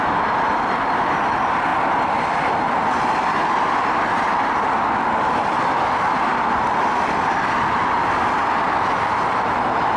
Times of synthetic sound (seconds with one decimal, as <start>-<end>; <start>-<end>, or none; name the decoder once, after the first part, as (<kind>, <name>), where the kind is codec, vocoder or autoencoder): none